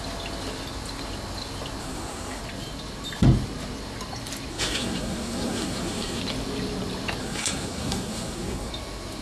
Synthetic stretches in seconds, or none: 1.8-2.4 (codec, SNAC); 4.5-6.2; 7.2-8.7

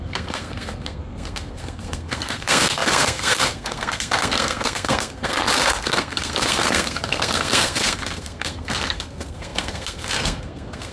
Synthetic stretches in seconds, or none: 0.0-10.9 (codec, SNAC)

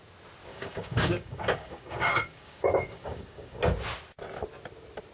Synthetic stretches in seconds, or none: 0.5-3.6 (codec, DAC)

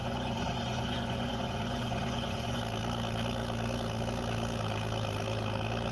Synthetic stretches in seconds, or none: 0.0-2.6 (vocoder, Vocos)

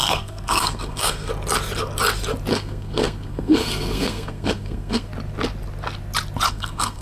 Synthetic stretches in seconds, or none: 0.0-1.3 (codec, SNAC); 2.5-5.1; 6.5-7.0

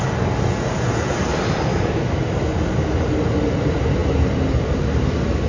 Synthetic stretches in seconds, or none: 1.7-2.2 (autoencoder, DAC-VAE)

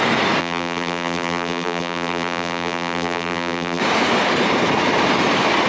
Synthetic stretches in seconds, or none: 0.4-3.8 (vocoder, BigVGAN v2)

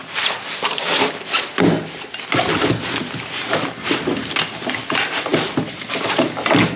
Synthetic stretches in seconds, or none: none